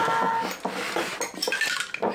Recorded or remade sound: recorded